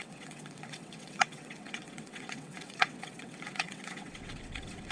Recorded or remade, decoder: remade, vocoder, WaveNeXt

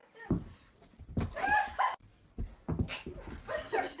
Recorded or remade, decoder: recorded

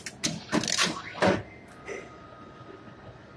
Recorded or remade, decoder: recorded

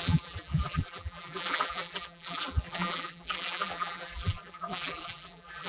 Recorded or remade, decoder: remade, vocoder, BigVGAN v2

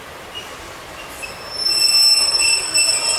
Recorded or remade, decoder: recorded